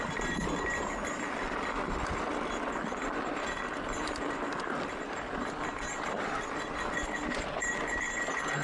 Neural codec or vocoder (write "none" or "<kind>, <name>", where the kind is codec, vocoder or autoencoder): none